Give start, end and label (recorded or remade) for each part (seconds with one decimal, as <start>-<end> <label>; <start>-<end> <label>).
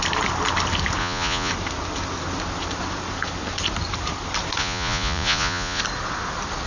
0.0-1.0 recorded; 1.0-1.5 remade; 1.5-4.6 recorded; 4.6-5.8 remade; 5.8-6.7 recorded